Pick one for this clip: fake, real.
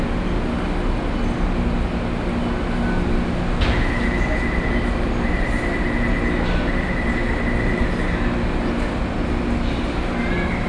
real